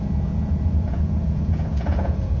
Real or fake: fake